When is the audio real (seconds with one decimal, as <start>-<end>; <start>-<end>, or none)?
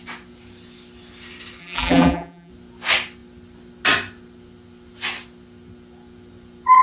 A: 0.0-1.6; 2.5-6.8